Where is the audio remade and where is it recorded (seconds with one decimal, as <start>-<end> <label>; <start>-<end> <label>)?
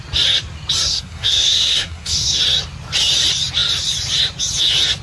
0.0-0.9 recorded; 0.9-2.4 remade; 2.4-5.0 recorded